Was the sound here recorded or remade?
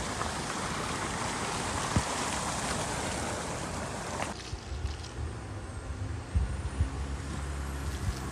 recorded